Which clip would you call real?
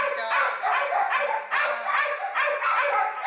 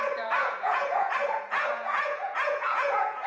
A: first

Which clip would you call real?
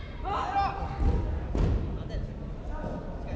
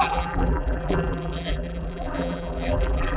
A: first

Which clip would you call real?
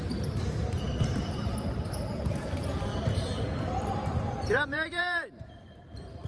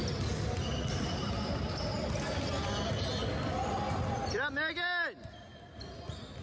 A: second